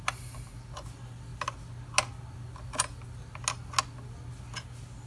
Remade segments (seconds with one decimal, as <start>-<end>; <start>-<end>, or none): none